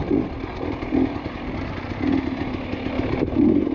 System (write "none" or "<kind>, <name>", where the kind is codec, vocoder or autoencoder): none